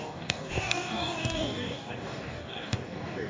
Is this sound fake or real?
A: fake